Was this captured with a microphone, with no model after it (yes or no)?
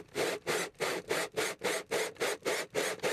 yes